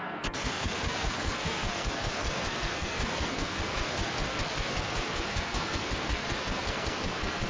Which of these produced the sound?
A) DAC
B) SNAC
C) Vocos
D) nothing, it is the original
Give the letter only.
B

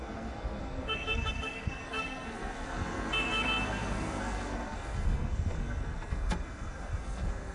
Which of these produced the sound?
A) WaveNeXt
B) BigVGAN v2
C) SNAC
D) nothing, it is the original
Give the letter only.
C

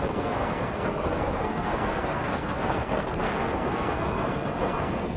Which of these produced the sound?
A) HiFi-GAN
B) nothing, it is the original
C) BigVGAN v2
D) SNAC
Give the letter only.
D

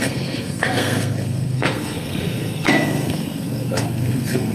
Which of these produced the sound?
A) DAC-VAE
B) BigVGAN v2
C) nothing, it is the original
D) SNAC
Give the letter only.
D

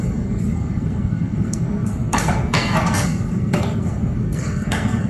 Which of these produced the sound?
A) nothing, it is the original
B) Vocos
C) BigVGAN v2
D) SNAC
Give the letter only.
D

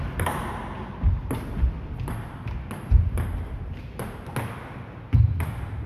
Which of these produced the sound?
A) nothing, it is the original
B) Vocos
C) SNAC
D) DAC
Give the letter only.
A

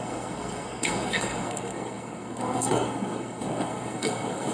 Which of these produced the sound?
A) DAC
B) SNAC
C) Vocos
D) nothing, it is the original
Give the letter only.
B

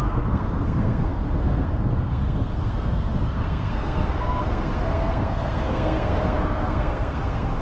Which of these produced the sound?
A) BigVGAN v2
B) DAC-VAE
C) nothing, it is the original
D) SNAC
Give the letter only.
D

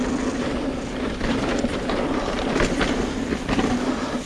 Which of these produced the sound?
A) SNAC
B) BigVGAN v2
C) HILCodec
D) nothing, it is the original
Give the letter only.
D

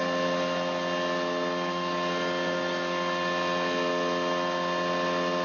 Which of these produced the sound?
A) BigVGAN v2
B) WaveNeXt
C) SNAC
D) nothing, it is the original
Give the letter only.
D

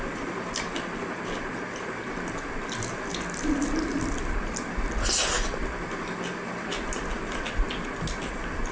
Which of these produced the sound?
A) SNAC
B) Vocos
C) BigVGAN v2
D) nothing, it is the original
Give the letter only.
D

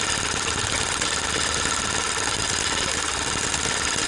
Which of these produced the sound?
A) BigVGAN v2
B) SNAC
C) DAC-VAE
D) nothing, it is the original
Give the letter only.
D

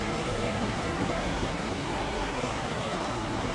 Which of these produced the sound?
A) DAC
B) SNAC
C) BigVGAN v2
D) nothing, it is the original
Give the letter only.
B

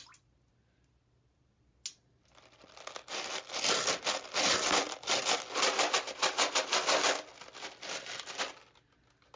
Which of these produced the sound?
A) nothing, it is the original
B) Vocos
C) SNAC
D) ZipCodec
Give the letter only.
A